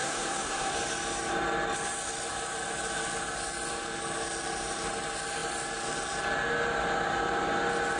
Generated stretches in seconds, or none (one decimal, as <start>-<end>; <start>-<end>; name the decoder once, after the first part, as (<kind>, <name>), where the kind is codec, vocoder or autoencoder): 0.0-0.7 (codec, SNAC)

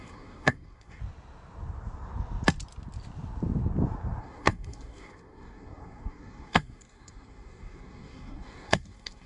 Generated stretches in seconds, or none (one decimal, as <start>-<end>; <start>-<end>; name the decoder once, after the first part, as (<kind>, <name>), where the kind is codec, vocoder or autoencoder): 0.0-1.0 (codec, SNAC); 4.2-9.3

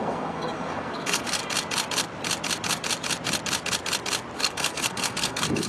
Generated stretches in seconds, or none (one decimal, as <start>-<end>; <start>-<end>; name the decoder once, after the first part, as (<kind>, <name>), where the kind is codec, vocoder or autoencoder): 0.0-1.4 (codec, SNAC); 4.4-5.7

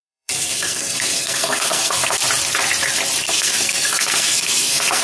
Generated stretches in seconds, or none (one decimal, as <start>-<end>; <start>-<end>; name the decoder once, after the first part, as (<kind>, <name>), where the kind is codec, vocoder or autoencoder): 0.0-2.2 (codec, SNAC); 3.2-5.0

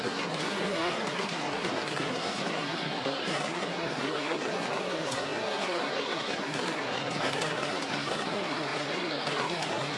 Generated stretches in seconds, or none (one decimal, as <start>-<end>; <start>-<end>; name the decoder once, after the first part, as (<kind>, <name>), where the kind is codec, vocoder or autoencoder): 0.0-10.0 (codec, SNAC)

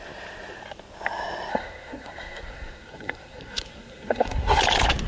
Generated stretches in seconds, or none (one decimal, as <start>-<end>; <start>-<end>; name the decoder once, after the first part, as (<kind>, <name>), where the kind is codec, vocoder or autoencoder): 1.5-4.6 (codec, SNAC)

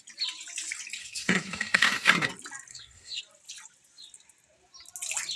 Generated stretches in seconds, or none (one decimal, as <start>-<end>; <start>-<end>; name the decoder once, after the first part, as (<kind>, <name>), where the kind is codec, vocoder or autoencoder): 1.0-2.3 (codec, SNAC); 2.7-3.2